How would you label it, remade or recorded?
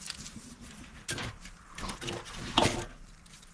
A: recorded